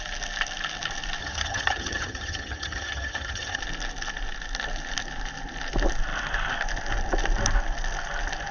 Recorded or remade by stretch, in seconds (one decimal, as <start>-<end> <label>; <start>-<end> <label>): 0.0-1.2 recorded; 1.2-3.6 remade; 3.6-8.5 recorded